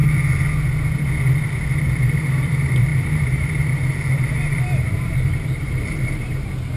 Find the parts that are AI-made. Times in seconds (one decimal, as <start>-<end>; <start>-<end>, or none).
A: 2.0-6.8

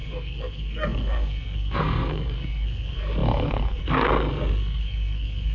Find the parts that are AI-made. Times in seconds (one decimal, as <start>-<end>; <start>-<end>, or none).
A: 0.0-5.5

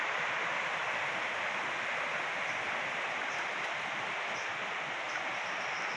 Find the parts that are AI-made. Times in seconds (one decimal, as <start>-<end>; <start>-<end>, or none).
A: 4.5-5.2

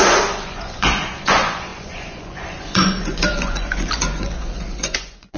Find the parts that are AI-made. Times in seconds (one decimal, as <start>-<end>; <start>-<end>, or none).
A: 0.0-5.4

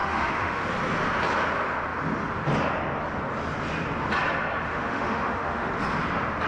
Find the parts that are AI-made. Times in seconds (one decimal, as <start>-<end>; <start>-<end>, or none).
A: 0.0-0.7; 4.7-5.7

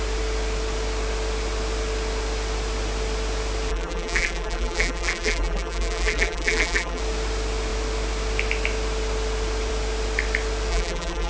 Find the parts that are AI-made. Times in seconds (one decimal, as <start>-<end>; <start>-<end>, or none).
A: 3.7-7.0; 10.7-11.3